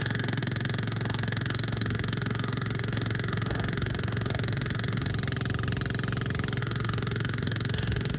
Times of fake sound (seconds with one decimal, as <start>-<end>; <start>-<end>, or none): 0.0-5.1; 6.6-8.2